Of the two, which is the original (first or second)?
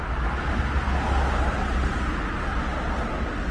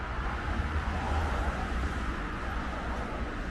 first